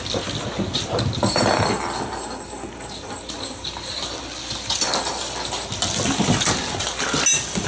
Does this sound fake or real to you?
real